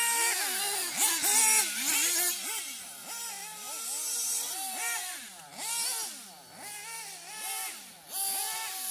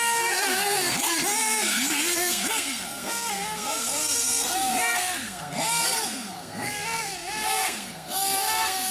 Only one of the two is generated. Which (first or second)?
second